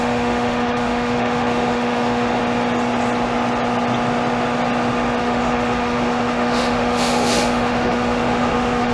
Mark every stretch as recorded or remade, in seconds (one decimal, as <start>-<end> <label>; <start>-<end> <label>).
0.0-2.4 remade; 2.4-5.2 recorded; 5.2-8.9 remade